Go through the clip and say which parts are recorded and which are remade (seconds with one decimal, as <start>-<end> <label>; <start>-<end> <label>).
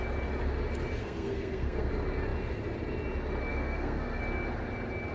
0.0-1.0 recorded; 1.0-1.9 remade; 1.9-3.5 recorded; 3.5-4.2 remade; 4.2-5.1 recorded